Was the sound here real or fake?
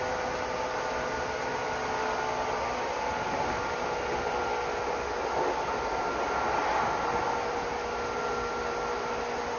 real